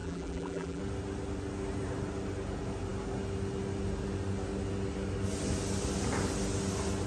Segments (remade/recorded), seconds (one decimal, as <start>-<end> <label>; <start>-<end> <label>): 0.0-0.8 remade; 0.8-7.1 recorded